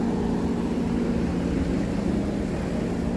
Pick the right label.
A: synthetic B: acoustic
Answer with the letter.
B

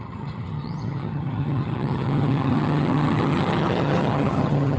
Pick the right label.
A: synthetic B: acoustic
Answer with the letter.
A